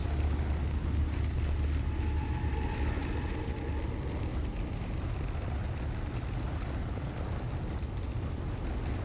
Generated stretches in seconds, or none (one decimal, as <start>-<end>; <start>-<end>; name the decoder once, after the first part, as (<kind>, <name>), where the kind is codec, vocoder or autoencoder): 4.3-8.3 (vocoder, BigVGAN v2)